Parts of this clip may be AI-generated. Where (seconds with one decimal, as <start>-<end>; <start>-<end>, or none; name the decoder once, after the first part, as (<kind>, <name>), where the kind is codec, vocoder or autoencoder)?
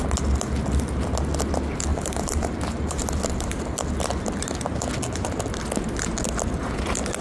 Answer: 1.9-3.0 (vocoder, BigVGAN v2)